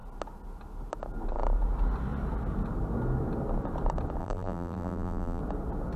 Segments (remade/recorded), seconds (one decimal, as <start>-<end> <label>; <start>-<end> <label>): 0.0-4.2 recorded; 4.2-5.4 remade; 5.4-6.0 recorded